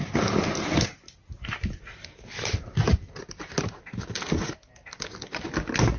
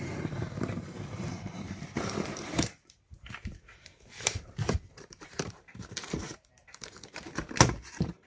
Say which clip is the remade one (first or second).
second